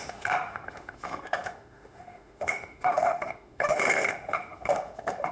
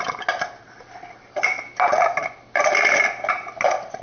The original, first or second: second